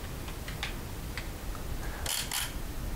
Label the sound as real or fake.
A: real